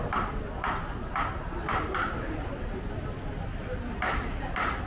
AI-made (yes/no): no